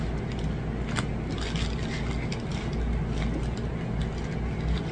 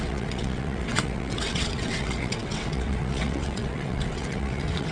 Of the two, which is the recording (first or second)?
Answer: first